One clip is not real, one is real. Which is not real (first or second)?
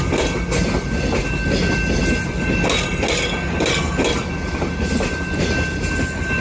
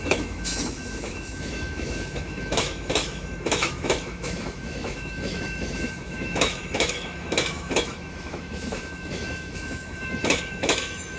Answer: second